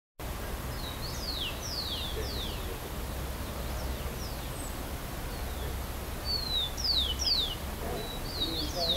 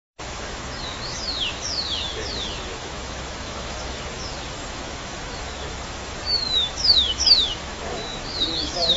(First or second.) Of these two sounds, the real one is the first